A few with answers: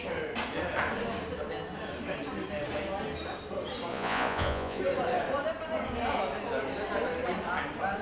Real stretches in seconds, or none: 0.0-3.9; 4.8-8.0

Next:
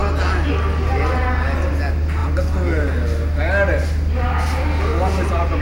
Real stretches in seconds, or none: 0.0-5.6

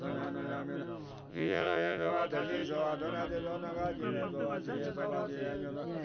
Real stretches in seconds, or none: 0.0-1.3; 2.1-6.0

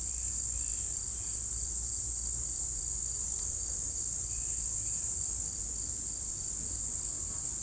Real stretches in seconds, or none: 0.0-7.6